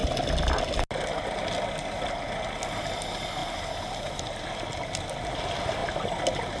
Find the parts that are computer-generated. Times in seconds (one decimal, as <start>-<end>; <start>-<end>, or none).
3.4-4.4